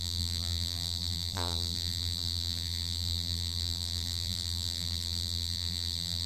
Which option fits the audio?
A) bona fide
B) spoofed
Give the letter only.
B